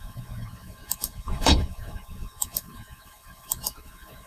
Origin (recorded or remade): remade